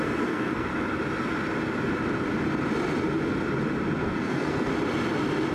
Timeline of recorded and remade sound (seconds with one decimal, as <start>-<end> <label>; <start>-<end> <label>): 0.0-0.7 remade; 0.7-4.0 recorded; 4.0-4.7 remade; 4.7-5.5 recorded